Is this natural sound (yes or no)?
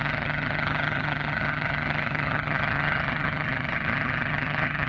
no